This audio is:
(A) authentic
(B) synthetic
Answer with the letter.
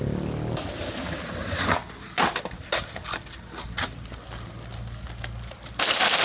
A